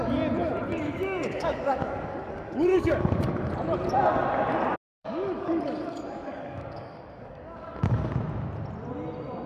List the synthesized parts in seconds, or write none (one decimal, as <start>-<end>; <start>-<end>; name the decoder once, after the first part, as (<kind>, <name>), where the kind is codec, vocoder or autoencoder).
0.7-3.5 (codec, DAC); 4.9-8.1